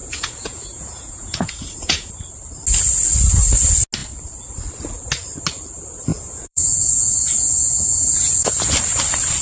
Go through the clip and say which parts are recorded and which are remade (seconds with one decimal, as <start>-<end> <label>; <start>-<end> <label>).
0.0-2.1 remade; 2.1-6.1 recorded; 6.1-8.5 remade; 8.5-9.4 recorded